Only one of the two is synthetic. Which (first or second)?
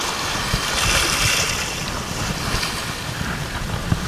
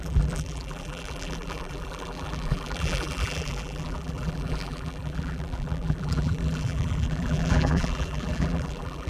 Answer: second